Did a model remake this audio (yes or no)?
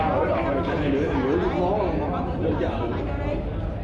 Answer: no